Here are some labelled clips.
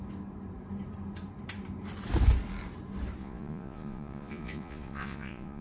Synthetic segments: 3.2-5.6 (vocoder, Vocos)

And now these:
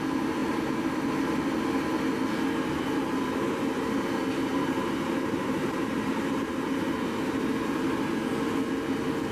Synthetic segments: 0.4-1.4 (vocoder, BigVGAN v2); 2.9-8.1

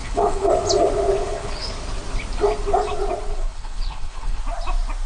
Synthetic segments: 0.0-0.5 (codec, HILCodec); 1.2-1.7; 3.3-4.4

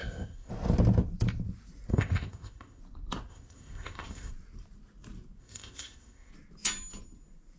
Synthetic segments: 0.0-0.5 (codec, ZipCodec); 1.9-2.8; 3.3-4.3; 5.4-6.3

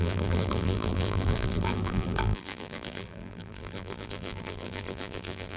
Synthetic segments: 0.0-5.6 (vocoder, BigVGAN v2)

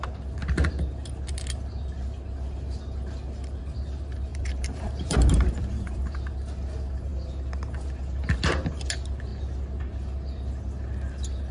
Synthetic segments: 4.3-6.0 (vocoder, BigVGAN v2)